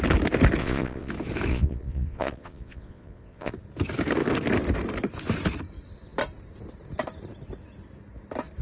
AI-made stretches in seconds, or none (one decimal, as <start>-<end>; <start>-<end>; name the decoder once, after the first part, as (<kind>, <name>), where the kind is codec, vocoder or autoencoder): 0.6-1.1 (vocoder, Vocos); 1.5-3.5